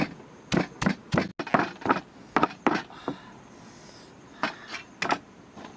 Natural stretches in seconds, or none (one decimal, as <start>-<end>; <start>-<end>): 0.0-5.8